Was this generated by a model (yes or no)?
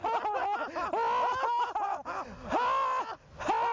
no